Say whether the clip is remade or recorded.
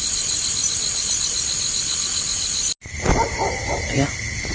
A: recorded